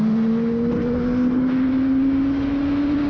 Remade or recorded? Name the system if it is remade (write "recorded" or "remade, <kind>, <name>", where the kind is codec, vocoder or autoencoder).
recorded